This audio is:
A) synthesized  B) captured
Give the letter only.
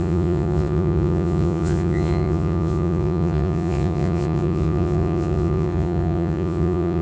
A